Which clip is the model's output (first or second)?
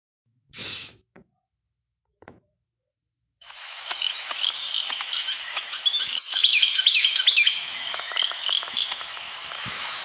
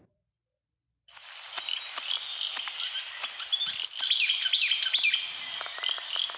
first